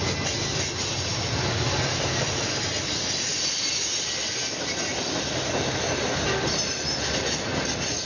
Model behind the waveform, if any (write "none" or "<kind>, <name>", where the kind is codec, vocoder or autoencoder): none